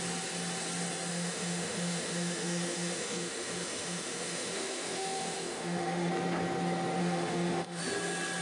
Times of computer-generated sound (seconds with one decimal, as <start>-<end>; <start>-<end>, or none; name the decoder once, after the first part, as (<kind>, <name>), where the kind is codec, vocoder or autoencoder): 1.1-6.1 (autoencoder, DAC-VAE); 7.0-7.8